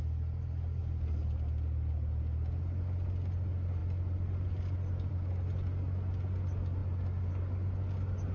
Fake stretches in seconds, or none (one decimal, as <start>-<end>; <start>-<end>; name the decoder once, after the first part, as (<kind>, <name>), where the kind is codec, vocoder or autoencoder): none